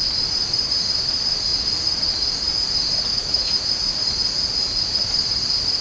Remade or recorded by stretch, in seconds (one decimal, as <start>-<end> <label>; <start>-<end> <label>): 0.0-3.1 recorded; 3.1-3.7 remade; 3.7-5.8 recorded